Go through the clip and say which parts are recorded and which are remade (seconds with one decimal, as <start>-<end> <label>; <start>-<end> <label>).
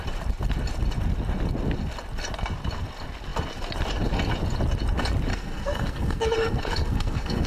0.0-5.3 recorded; 5.3-7.5 remade